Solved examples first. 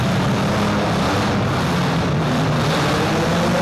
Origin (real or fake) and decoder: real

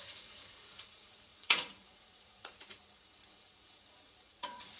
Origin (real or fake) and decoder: fake, vocoder, Vocos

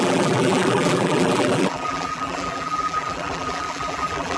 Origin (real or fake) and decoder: fake, vocoder, BigVGAN v2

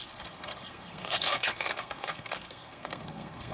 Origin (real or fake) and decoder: fake, codec, SNAC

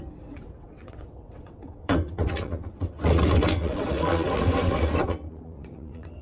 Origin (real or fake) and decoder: fake, vocoder, WaveNeXt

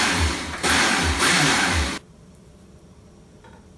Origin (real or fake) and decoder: fake, vocoder, BigVGAN v2